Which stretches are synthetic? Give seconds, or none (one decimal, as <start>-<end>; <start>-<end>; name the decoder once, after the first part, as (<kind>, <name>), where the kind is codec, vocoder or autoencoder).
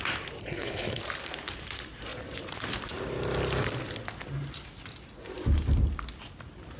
0.4-1.0 (codec, HILCodec)